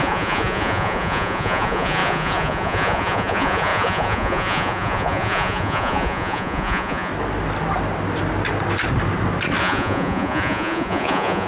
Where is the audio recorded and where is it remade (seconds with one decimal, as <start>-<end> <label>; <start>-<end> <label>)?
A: 0.0-7.1 remade; 7.1-9.6 recorded; 9.6-11.5 remade